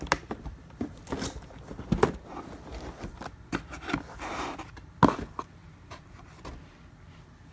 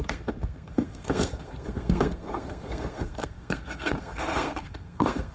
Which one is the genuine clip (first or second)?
first